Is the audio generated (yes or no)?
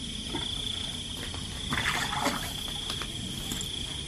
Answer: no